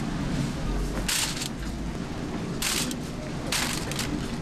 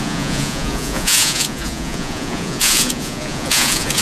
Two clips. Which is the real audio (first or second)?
first